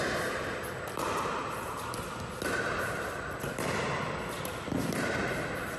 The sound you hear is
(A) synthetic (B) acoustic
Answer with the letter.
B